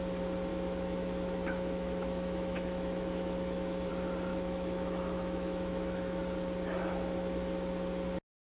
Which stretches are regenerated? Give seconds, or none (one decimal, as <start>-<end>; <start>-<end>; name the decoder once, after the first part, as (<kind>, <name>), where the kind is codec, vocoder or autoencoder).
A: 0.5-3.9 (autoencoder, DAC-VAE); 4.3-6.2